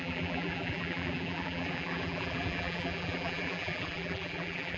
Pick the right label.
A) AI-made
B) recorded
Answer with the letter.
A